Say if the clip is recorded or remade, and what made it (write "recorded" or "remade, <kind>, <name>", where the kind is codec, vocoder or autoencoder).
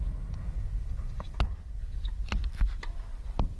recorded